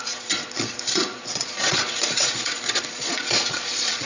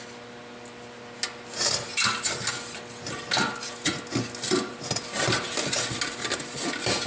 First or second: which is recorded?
second